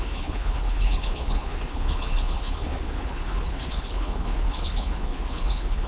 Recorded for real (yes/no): no